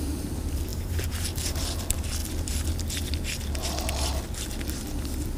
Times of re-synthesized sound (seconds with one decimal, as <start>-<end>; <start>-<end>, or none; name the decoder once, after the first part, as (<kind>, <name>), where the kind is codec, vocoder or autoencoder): 0.7-1.6 (vocoder, BigVGAN v2)